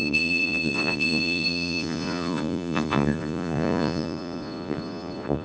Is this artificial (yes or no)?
yes